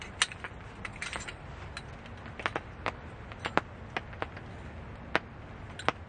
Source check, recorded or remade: recorded